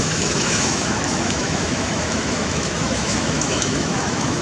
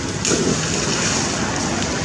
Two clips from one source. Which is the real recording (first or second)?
second